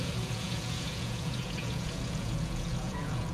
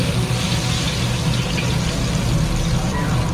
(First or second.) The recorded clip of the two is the second